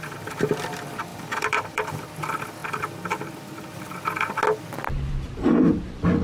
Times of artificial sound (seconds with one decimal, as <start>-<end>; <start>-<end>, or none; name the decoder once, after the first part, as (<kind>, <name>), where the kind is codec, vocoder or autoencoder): 1.1-1.9 (vocoder, BigVGAN v2)